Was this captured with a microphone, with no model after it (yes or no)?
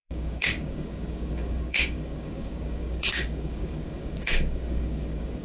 no